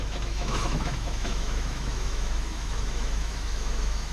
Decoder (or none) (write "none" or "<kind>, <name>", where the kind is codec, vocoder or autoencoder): autoencoder, DAC-VAE